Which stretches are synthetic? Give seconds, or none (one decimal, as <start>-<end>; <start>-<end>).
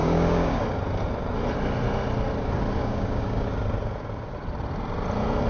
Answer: 0.0-0.6; 2.8-3.5